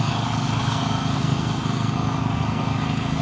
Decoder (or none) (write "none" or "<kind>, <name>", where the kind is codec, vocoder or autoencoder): codec, SNAC